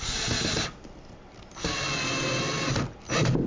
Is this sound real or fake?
real